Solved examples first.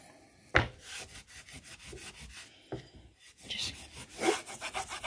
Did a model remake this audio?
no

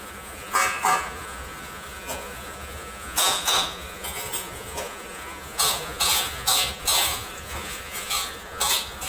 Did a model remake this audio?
yes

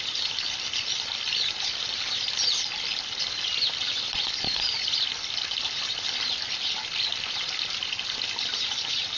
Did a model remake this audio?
no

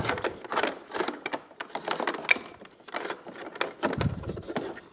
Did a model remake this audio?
no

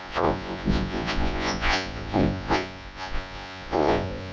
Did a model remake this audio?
yes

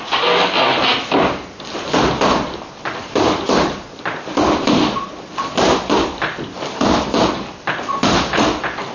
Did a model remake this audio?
no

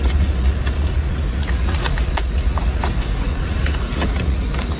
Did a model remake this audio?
yes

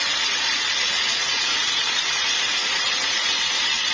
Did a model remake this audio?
yes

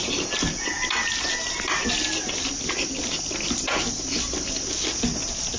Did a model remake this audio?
no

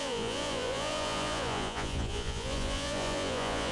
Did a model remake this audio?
yes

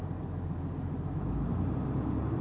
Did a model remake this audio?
no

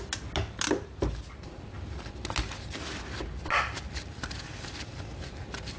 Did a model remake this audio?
no